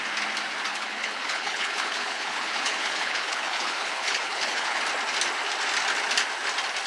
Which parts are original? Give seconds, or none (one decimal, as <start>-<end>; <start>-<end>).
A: 0.0-0.7; 4.8-6.9

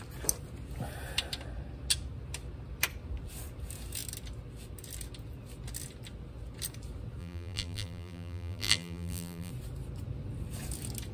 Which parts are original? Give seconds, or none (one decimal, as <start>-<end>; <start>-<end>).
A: 0.0-7.2; 9.5-11.1

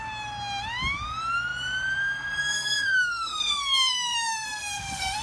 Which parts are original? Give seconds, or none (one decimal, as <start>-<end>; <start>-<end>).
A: 0.0-2.4

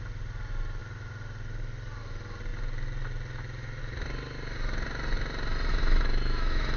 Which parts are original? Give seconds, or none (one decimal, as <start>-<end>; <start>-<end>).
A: 0.0-5.7

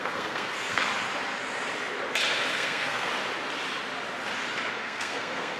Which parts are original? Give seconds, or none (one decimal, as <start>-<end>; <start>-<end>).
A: 0.9-2.5; 3.1-4.7

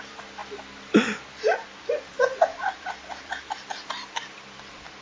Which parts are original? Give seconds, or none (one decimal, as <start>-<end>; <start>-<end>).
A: none